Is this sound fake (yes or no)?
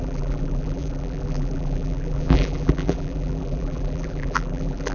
yes